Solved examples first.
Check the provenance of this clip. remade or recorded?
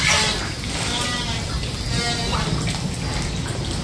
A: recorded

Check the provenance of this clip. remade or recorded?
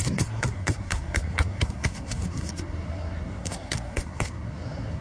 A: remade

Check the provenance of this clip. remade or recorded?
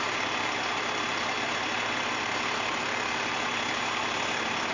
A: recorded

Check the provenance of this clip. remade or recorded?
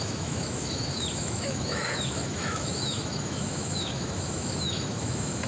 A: remade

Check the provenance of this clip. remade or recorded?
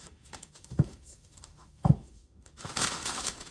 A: remade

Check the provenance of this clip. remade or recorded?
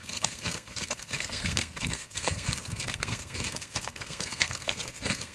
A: remade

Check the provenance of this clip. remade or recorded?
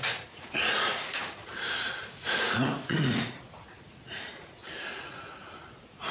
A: remade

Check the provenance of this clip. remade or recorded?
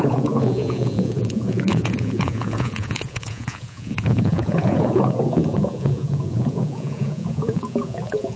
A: remade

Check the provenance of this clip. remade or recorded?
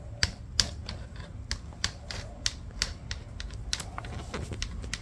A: recorded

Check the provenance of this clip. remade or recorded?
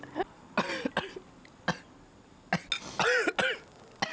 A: recorded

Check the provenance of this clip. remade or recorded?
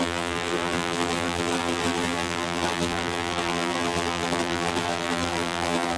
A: remade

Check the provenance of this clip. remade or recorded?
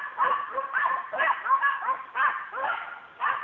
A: recorded